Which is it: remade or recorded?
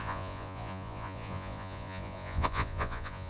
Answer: remade